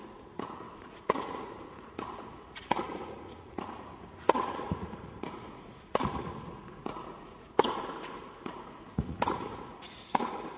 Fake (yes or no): yes